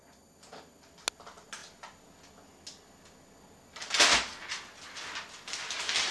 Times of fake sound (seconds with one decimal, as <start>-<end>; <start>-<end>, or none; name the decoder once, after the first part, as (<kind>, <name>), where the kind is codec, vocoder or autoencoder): none